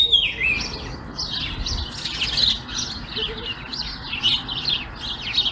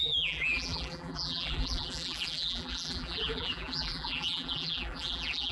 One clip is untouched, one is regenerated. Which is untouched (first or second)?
first